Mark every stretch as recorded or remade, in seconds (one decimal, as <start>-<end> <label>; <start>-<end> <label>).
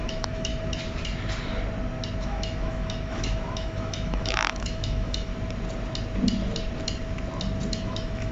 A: 0.0-0.5 remade; 0.5-2.2 recorded; 2.2-5.3 remade; 5.3-7.7 recorded; 7.7-8.3 remade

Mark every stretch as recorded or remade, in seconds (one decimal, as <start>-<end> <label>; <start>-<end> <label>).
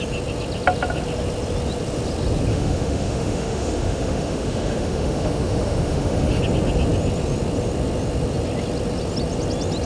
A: 0.0-2.5 recorded; 2.5-6.4 remade; 6.4-9.9 recorded